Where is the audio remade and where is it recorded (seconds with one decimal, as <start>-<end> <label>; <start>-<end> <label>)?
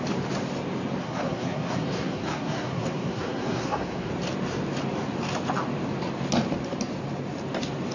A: 0.0-1.0 recorded; 1.0-4.1 remade; 4.1-7.9 recorded